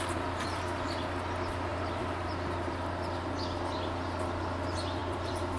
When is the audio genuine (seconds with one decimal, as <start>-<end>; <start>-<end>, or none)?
0.0-1.7; 2.7-5.0